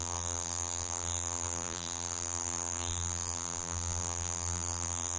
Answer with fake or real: fake